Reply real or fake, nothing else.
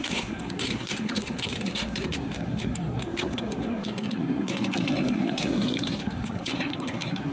fake